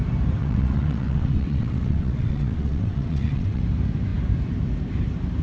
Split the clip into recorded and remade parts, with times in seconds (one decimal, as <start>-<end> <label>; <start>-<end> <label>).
0.0-0.4 recorded; 0.4-3.6 remade; 3.6-5.4 recorded